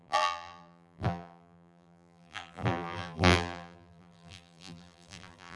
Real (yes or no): no